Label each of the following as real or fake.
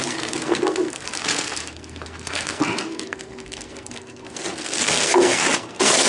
fake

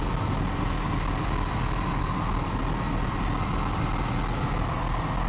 real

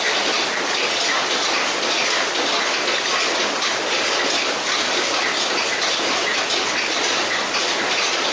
real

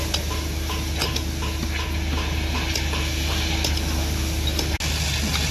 real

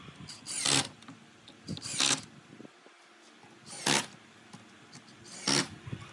real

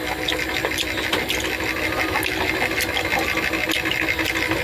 real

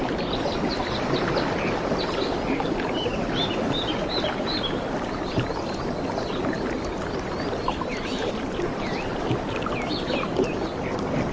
real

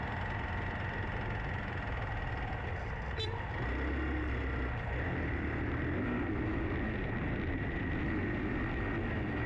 real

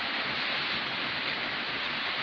real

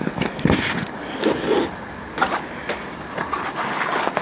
real